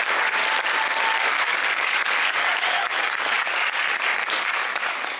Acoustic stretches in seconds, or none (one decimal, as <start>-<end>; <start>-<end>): 0.4-1.2